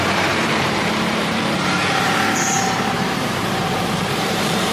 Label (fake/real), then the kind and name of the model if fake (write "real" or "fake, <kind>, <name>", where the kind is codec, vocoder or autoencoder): fake, vocoder, BigVGAN v2